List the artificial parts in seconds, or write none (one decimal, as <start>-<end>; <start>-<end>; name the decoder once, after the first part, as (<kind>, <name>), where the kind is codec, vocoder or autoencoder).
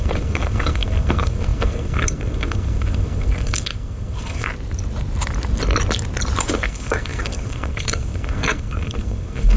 0.0-4.5 (codec, SNAC); 6.5-9.6